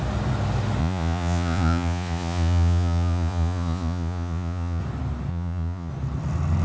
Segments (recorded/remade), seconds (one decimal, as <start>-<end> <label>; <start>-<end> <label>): 0.0-0.8 recorded; 0.8-4.8 remade; 4.8-5.3 recorded; 5.3-5.9 remade; 5.9-6.6 recorded